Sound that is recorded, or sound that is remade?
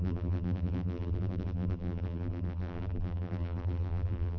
remade